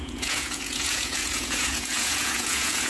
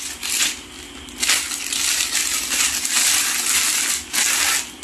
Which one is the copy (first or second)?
first